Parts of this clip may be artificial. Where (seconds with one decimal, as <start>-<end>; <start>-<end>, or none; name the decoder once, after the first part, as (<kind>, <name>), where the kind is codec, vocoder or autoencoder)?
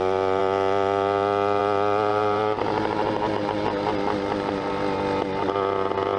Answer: 2.1-4.7 (vocoder, BigVGAN v2)